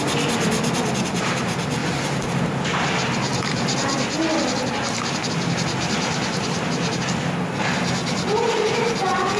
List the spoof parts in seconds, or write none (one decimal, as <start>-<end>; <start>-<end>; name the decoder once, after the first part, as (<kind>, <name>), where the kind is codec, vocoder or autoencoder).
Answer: none

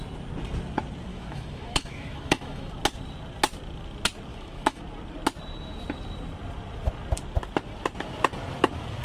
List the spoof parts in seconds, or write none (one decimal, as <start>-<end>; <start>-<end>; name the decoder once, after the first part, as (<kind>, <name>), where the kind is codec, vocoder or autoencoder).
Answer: 1.1-2.7 (autoencoder, DAC-VAE); 4.3-4.8

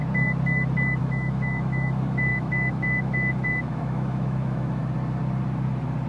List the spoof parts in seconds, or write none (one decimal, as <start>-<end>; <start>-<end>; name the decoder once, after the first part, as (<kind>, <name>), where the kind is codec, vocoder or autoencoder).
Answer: 1.0-4.8 (autoencoder, DAC-VAE)